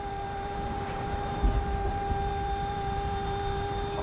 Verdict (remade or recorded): remade